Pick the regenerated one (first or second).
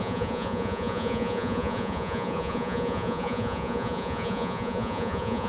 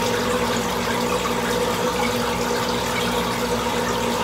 first